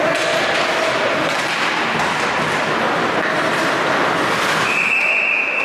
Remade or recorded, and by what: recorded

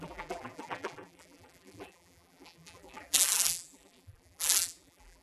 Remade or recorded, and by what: remade, vocoder, BigVGAN v2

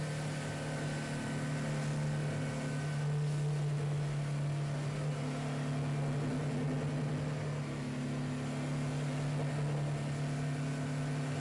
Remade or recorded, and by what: recorded